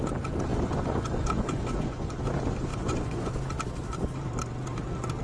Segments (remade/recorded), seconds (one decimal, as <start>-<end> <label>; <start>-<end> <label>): 0.0-0.5 recorded; 0.5-2.2 remade; 2.2-2.7 recorded; 2.7-3.3 remade; 3.3-5.2 recorded